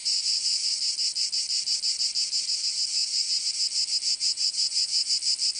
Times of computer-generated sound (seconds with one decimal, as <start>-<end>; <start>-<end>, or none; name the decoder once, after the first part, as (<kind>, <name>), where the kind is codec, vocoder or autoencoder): 0.0-0.7 (vocoder, Vocos); 3.0-3.5; 4.1-5.1